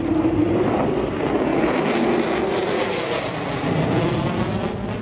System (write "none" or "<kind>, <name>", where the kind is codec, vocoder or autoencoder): none